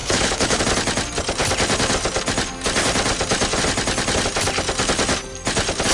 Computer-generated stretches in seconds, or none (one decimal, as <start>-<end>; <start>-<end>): 0.0-0.6

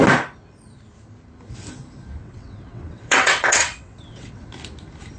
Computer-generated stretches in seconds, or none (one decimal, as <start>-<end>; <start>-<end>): 2.2-4.5

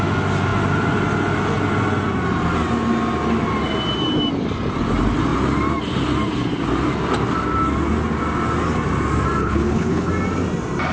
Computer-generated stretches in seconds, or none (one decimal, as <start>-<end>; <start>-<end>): 9.4-10.1

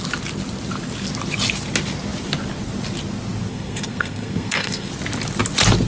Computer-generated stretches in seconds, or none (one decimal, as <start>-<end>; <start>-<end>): 3.5-4.9

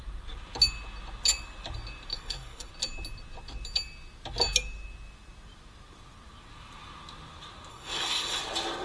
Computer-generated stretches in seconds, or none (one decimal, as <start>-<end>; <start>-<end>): 2.1-2.7; 7.7-8.4

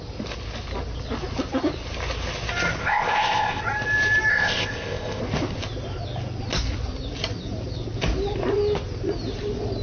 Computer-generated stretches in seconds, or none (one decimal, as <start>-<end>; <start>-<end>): 2.8-3.6; 4.3-5.2

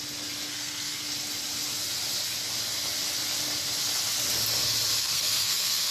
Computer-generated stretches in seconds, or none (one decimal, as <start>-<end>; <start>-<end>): 0.5-1.0; 5.0-5.9

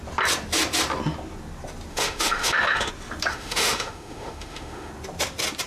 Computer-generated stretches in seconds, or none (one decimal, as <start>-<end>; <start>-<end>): 1.9-2.9; 3.3-4.9